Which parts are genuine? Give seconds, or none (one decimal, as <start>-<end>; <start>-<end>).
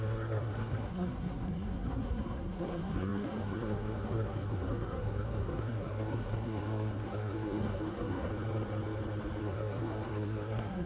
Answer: 8.3-9.4